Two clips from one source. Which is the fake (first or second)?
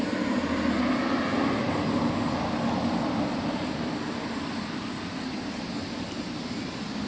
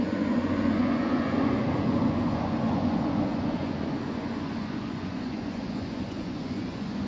second